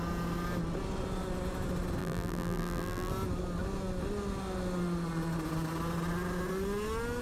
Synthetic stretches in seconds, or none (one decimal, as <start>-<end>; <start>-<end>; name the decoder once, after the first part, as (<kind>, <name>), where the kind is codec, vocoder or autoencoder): 2.0-3.1 (vocoder, BigVGAN v2)